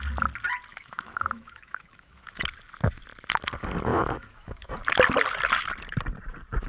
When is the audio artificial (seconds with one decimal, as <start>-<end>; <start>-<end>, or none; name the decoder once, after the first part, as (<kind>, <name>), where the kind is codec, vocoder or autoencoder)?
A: 0.7-2.4 (autoencoder, DAC-VAE); 3.9-4.7

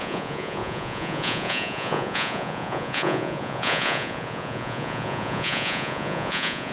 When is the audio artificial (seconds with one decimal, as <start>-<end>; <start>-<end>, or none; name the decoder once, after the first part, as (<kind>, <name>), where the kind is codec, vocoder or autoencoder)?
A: 0.0-6.7 (vocoder, Vocos)

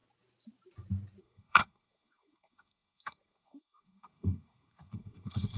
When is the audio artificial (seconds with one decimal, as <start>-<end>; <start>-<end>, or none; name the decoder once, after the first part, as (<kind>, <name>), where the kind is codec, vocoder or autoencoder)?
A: 1.2-5.6 (codec, SNAC)

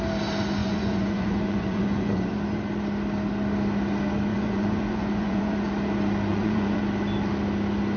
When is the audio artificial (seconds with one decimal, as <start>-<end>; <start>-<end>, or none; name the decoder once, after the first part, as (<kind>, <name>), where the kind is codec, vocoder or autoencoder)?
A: 0.6-2.3 (vocoder, Vocos); 4.3-5.7; 6.3-6.8